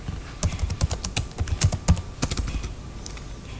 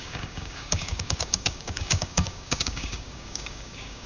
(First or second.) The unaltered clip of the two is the first